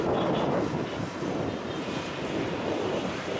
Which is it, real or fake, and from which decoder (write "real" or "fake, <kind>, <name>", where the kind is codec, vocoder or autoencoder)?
real